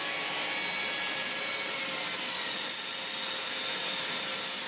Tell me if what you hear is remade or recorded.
recorded